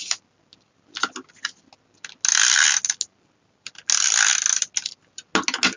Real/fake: real